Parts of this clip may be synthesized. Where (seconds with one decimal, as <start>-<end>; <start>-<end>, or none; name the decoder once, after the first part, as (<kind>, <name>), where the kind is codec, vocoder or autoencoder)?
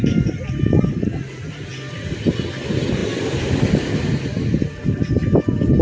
none